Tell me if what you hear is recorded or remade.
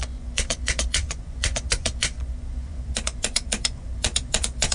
remade